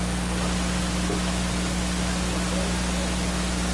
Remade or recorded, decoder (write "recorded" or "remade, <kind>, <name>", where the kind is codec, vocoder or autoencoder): recorded